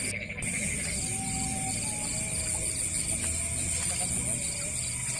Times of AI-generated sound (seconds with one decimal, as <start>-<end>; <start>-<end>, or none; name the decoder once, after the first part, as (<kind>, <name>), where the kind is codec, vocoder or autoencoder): none